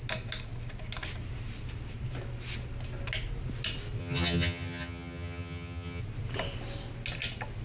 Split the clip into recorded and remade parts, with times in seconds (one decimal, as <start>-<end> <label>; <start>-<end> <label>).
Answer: 0.0-4.0 recorded; 4.0-6.0 remade; 6.0-7.6 recorded